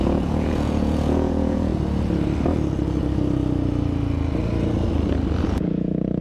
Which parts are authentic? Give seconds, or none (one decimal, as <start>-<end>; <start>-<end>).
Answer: 1.7-5.4